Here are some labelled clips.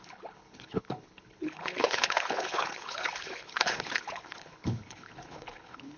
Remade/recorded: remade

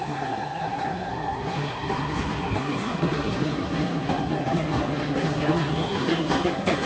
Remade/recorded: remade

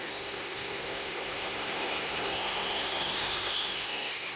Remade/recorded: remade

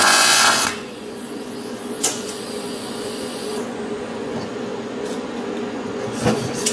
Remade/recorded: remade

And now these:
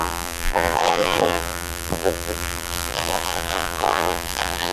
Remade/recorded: remade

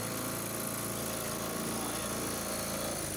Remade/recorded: recorded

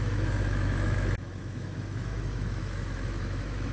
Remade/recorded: remade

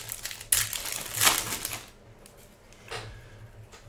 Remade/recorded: recorded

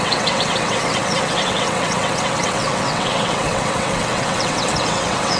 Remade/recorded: remade